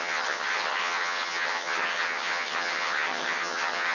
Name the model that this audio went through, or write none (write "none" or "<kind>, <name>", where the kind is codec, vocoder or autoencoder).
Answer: vocoder, HiFi-GAN